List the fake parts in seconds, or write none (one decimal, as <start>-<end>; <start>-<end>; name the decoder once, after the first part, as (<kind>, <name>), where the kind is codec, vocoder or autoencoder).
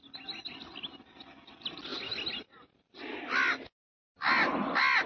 none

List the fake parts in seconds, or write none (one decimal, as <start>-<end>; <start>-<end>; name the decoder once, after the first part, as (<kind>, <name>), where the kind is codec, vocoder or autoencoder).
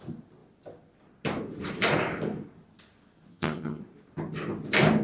3.3-3.8 (vocoder, HiFi-GAN)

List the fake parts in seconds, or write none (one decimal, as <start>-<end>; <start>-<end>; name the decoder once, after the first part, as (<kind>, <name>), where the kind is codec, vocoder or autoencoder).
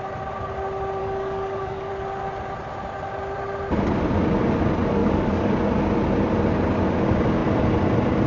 1.0-1.9 (codec, DAC); 5.0-5.7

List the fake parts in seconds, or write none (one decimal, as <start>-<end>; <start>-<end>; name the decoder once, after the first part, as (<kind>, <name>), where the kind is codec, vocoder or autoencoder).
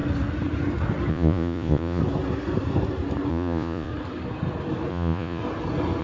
1.1-2.0 (vocoder, Vocos); 3.3-3.9; 4.9-5.4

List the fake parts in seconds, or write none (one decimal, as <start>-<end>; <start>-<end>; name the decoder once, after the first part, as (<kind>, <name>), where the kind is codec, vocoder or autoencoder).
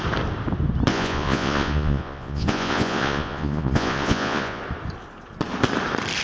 0.9-4.6 (vocoder, Vocos)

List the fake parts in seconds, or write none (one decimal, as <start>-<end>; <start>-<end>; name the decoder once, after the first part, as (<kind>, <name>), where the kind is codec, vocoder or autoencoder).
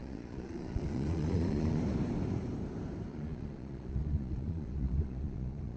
0.0-1.8 (vocoder, Vocos); 3.1-5.8